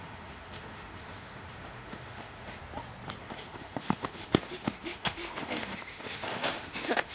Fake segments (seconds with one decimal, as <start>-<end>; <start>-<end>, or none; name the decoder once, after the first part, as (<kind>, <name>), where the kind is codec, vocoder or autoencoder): 0.0-2.6 (autoencoder, DAC-VAE); 3.2-7.1